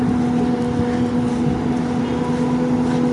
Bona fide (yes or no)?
yes